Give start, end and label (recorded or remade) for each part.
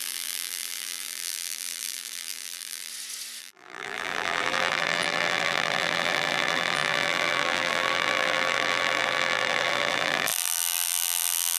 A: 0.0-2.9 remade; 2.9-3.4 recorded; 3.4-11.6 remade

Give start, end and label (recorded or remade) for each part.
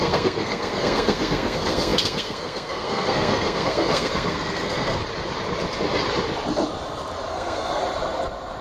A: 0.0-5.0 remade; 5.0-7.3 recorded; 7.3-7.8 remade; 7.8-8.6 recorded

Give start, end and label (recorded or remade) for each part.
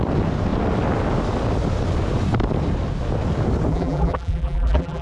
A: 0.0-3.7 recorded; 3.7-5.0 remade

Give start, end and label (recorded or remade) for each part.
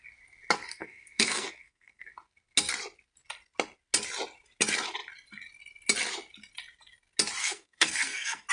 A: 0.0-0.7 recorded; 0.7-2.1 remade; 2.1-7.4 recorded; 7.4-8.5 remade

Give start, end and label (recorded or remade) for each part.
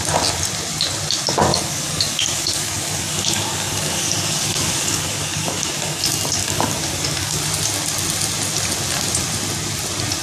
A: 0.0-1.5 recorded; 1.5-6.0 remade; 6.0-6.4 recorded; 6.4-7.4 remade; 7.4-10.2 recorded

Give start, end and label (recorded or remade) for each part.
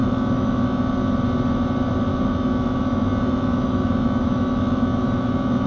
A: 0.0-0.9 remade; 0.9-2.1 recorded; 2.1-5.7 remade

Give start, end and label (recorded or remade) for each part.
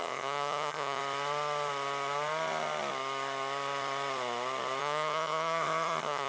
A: 0.0-1.0 remade; 1.0-4.8 recorded; 4.8-6.3 remade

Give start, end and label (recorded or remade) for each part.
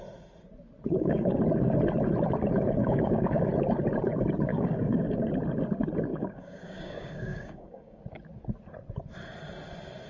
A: 0.0-0.9 recorded; 0.9-1.4 remade; 1.4-2.8 recorded; 2.8-3.5 remade; 3.5-4.5 recorded; 4.5-5.3 remade; 5.3-6.1 recorded; 6.1-8.0 remade; 8.0-10.1 recorded